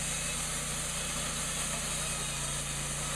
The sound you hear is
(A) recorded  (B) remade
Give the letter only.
A